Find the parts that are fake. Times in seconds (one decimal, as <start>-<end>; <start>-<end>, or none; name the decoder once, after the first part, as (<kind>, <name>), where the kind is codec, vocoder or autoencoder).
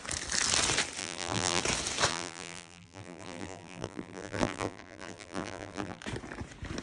1.0-1.6 (vocoder, BigVGAN v2); 2.1-6.0